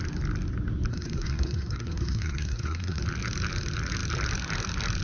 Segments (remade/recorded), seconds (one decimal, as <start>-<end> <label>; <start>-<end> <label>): 0.0-0.9 recorded; 0.9-3.0 remade; 3.0-5.0 recorded